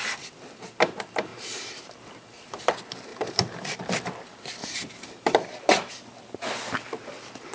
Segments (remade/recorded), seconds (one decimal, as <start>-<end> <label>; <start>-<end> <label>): 0.0-1.3 recorded; 1.3-2.6 remade; 2.6-3.1 recorded; 3.1-3.8 remade; 3.8-4.6 recorded; 4.6-5.9 remade; 5.9-7.5 recorded